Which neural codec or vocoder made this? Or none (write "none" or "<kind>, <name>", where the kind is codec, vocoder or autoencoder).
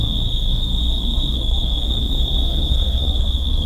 codec, SNAC